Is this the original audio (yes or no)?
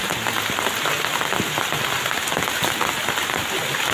yes